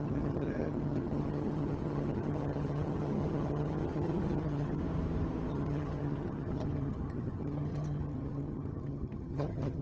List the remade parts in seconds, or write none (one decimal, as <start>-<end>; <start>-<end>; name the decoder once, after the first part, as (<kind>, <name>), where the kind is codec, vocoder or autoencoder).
0.0-4.8 (vocoder, HiFi-GAN); 5.5-9.8